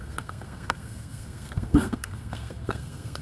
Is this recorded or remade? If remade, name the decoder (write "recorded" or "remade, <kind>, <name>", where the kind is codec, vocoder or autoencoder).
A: remade, codec, SNAC